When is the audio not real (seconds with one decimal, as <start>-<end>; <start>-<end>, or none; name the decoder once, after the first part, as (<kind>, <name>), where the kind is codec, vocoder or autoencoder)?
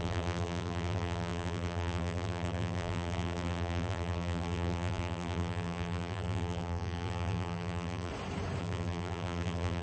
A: 0.0-8.1 (vocoder, BigVGAN v2); 8.6-9.8